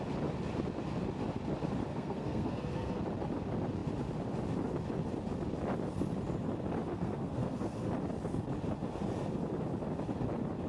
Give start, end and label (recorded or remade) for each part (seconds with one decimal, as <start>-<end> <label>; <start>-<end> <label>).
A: 0.0-1.9 recorded; 1.9-3.0 remade; 3.0-6.9 recorded; 6.9-7.9 remade; 7.9-10.7 recorded